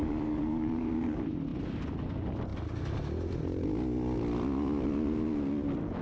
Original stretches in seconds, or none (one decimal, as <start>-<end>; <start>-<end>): 0.9-6.0

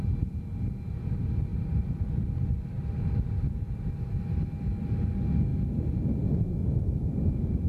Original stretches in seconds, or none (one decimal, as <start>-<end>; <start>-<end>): 0.0-1.5; 3.9-6.6; 7.2-7.7

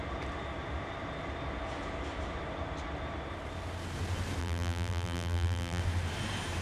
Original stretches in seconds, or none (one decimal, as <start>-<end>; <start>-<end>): 0.0-4.4; 5.8-6.6

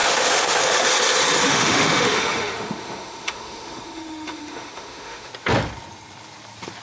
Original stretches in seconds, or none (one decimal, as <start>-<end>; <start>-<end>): 0.7-1.4; 5.3-6.8

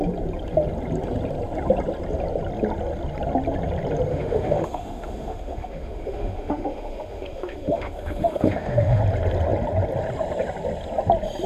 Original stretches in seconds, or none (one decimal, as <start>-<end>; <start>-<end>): 0.0-4.1; 9.0-11.5

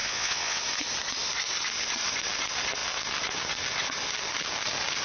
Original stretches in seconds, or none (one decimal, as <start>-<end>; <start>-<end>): 0.6-5.0

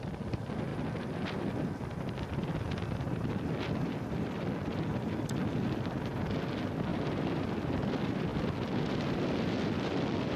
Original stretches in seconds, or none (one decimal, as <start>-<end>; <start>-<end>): 0.0-0.7; 1.5-6.9; 7.4-10.4